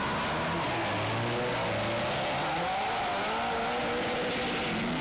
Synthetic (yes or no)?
no